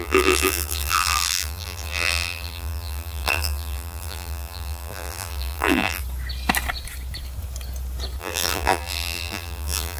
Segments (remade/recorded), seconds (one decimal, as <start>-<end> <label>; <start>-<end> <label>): 0.0-6.0 remade; 6.0-8.2 recorded; 8.2-10.0 remade

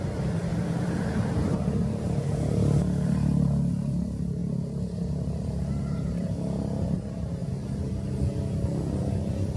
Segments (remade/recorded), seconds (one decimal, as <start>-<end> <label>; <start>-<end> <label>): 0.0-7.4 remade; 7.4-9.1 recorded; 9.1-9.6 remade